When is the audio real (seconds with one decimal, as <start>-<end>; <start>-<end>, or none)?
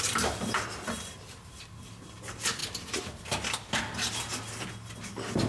0.0-5.5